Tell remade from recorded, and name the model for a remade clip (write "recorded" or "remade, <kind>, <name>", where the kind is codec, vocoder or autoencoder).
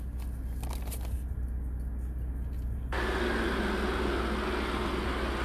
recorded